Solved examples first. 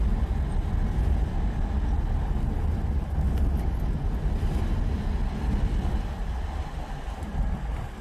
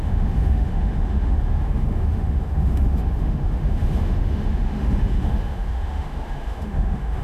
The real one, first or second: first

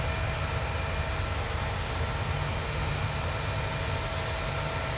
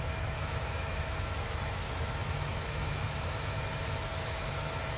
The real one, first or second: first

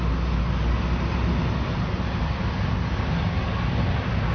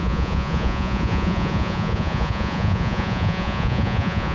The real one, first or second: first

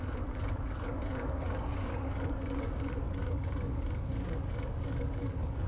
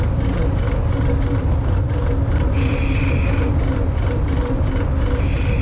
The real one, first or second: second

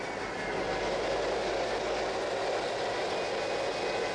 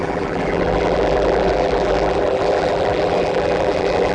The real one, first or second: first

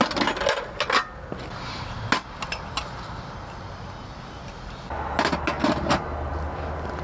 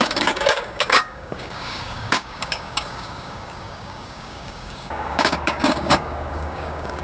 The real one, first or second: first